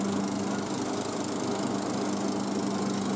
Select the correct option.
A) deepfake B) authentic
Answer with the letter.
B